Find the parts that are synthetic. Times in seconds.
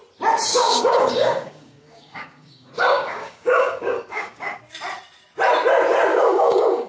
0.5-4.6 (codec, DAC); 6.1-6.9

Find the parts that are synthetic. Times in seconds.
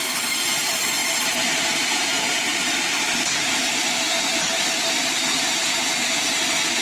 none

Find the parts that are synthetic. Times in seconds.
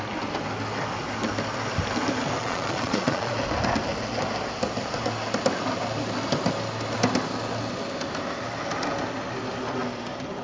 2.4-3.3 (vocoder, Vocos)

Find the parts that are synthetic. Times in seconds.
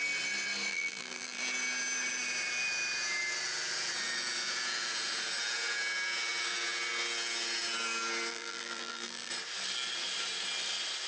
0.7-1.4 (vocoder, BigVGAN v2); 8.3-9.3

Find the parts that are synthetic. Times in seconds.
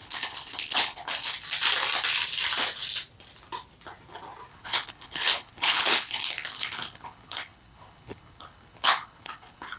0.0-1.1 (codec, HILCodec); 4.5-9.8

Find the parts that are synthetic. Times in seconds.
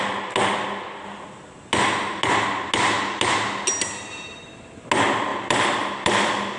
none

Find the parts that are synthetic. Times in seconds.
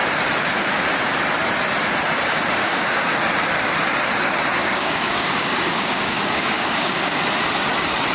2.6-3.2 (codec, DAC); 4.6-7.2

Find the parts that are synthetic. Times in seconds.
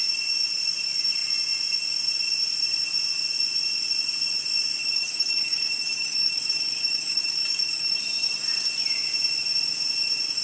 4.8-8.0 (autoencoder, DAC-VAE)